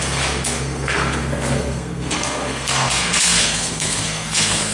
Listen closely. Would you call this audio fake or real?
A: fake